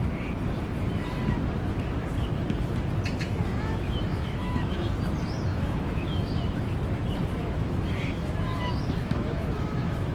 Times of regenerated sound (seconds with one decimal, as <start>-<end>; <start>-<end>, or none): 3.5-4.9; 5.5-6.6; 7.4-10.1